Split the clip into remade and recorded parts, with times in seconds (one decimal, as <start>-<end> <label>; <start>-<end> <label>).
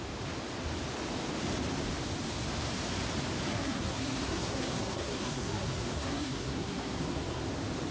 0.0-3.5 recorded; 3.5-7.4 remade; 7.4-7.9 recorded